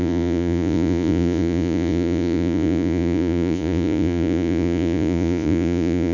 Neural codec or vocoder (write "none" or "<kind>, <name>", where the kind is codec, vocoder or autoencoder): vocoder, Vocos